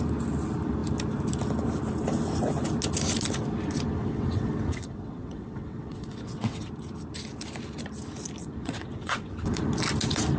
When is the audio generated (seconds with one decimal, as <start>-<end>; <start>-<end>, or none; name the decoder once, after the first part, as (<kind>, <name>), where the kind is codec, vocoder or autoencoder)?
4.0-6.7 (vocoder, WaveNeXt); 8.4-9.6

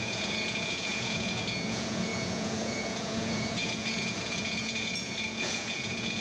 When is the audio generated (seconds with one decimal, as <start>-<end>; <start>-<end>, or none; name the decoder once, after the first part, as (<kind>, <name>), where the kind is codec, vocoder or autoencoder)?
0.0-6.2 (vocoder, Vocos)

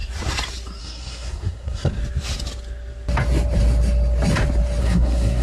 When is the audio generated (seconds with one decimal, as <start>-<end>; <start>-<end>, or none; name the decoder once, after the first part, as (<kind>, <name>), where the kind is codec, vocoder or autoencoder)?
0.8-2.0 (codec, SNAC); 4.8-5.4

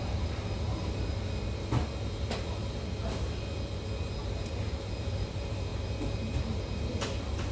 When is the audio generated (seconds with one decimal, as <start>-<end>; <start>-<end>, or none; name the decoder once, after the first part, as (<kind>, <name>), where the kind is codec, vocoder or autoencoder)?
0.0-1.0 (vocoder, BigVGAN v2); 4.2-7.5

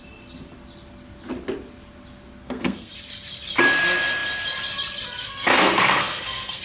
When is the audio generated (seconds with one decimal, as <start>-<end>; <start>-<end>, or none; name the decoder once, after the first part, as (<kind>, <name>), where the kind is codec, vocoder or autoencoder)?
2.4-2.9 (codec, SNAC); 5.2-6.6